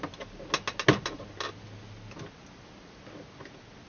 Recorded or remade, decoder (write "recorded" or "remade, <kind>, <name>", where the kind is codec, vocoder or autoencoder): recorded